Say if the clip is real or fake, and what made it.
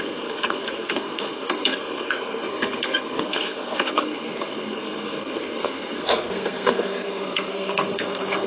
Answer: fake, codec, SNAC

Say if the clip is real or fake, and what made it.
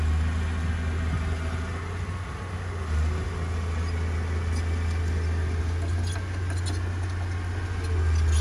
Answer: real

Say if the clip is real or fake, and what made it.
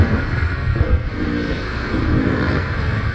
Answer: fake, codec, SNAC